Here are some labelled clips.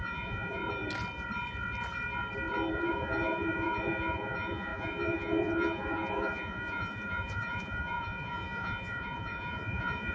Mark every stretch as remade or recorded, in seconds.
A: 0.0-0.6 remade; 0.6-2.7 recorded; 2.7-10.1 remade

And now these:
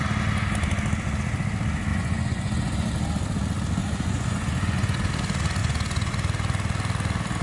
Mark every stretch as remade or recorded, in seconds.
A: 0.0-1.9 recorded; 1.9-2.9 remade; 2.9-3.8 recorded; 3.8-5.1 remade; 5.1-5.6 recorded; 5.6-6.1 remade; 6.1-7.4 recorded

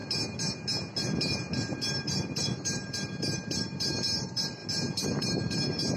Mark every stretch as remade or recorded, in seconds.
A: 0.0-1.9 recorded; 1.9-4.6 remade; 4.6-5.1 recorded; 5.1-6.0 remade

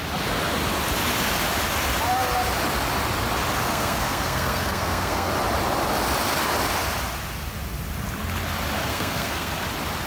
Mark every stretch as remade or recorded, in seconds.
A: 0.0-3.7 recorded; 3.7-5.3 remade; 5.3-8.9 recorded; 8.9-9.5 remade; 9.5-10.1 recorded

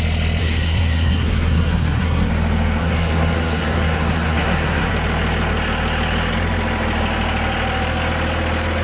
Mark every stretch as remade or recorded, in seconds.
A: 0.0-0.4 recorded; 0.4-2.3 remade; 2.3-2.8 recorded; 2.8-4.9 remade; 4.9-8.8 recorded